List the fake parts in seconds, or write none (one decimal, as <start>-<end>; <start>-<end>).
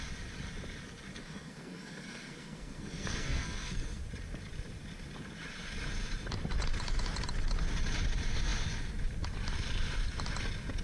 1.1-4.0